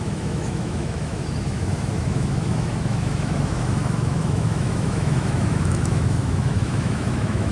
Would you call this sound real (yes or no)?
no